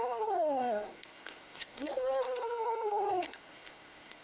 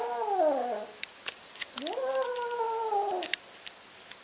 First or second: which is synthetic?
first